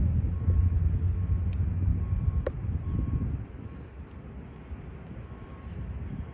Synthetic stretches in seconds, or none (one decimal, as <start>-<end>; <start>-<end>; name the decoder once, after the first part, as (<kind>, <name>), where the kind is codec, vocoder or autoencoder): 1.9-4.3 (vocoder, BigVGAN v2)